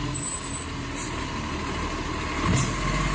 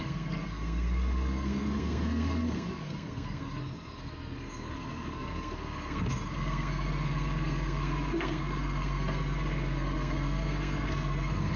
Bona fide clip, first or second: first